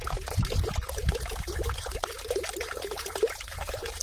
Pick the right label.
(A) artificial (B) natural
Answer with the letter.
A